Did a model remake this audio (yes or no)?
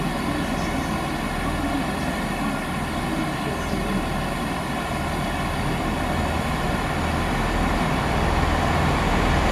no